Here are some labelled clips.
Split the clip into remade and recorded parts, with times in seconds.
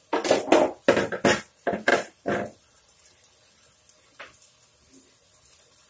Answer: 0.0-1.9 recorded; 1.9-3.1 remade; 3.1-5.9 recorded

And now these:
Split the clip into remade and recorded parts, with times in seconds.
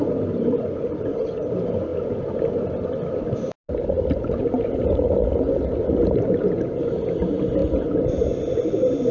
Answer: 0.0-9.1 recorded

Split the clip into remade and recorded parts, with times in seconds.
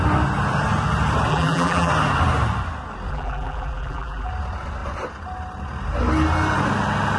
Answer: 0.0-1.3 recorded; 1.3-1.9 remade; 1.9-3.1 recorded; 3.1-4.3 remade; 4.3-7.2 recorded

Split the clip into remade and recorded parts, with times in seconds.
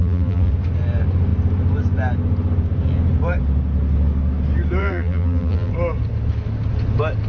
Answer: 0.0-0.5 remade; 0.5-4.8 recorded; 4.8-5.7 remade; 5.7-7.3 recorded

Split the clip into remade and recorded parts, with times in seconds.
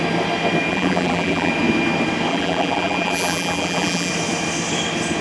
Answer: 0.0-0.7 recorded; 0.7-1.5 remade; 1.5-2.3 recorded; 2.3-4.1 remade; 4.1-5.2 recorded